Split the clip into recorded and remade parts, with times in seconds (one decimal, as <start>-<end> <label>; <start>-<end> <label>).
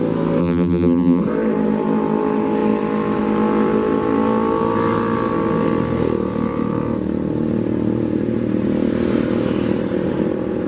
0.0-0.4 recorded; 0.4-1.2 remade; 1.2-10.7 recorded